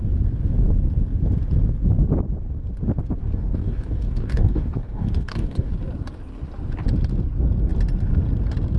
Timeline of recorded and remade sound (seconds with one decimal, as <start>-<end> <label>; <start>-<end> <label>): 0.0-3.2 recorded; 3.2-5.7 remade; 5.7-8.8 recorded